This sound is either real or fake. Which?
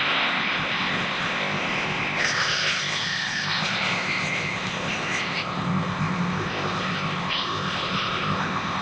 fake